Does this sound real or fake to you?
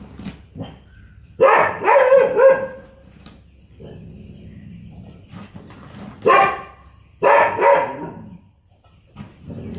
real